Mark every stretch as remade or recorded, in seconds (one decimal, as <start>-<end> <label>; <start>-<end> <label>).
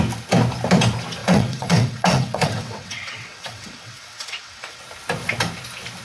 0.0-1.2 recorded; 1.2-4.8 remade; 4.8-6.0 recorded